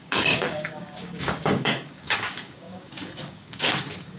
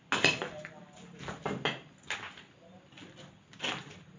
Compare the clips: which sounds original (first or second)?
second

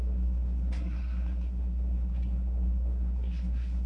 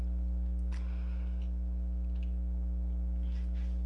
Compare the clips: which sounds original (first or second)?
second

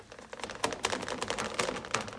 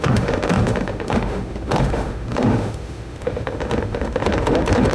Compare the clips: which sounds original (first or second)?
first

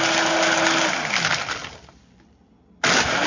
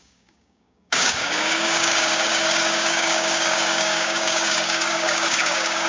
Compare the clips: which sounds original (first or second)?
first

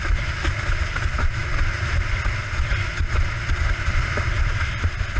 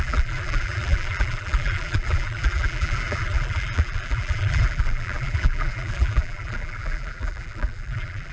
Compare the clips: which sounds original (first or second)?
first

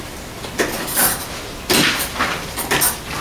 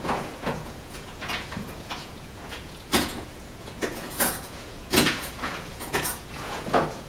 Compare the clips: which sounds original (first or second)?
first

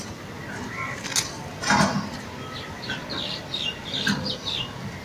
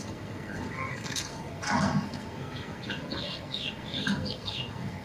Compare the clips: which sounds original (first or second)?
first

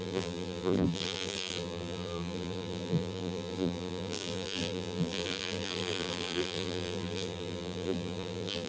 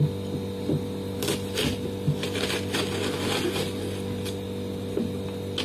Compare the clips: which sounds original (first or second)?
second